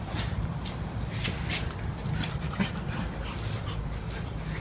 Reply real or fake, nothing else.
fake